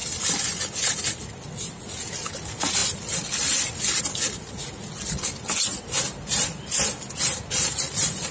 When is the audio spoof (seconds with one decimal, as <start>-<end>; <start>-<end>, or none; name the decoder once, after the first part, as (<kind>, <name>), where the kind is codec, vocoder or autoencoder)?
none